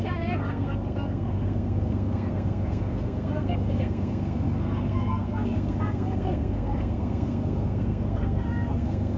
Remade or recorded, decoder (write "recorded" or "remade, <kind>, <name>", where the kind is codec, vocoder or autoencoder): remade, codec, SNAC